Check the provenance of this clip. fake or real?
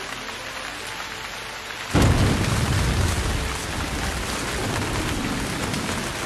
real